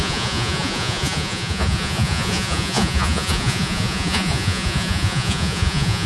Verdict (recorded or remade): remade